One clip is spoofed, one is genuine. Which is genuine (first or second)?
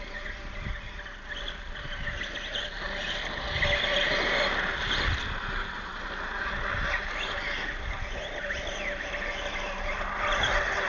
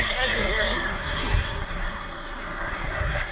first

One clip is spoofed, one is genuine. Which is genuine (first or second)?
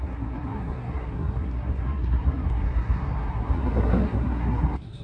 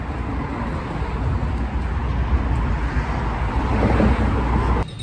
second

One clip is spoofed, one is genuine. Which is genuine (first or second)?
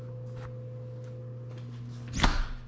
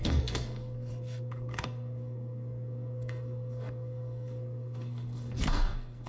first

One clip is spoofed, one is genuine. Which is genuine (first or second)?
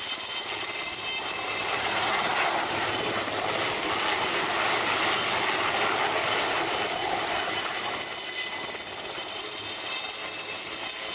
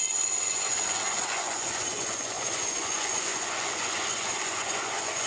first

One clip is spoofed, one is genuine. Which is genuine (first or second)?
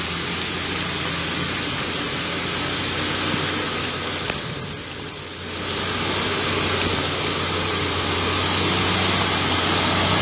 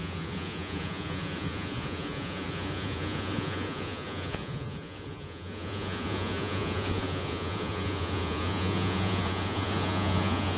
first